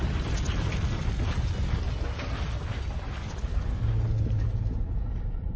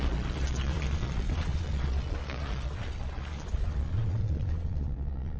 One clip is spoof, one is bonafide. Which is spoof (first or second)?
second